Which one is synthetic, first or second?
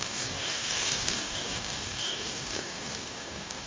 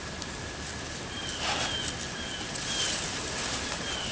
first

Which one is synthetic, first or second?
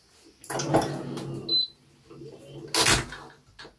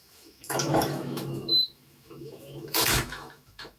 second